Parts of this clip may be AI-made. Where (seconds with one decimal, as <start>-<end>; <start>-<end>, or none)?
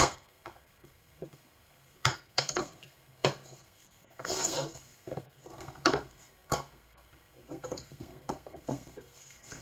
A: 0.0-9.6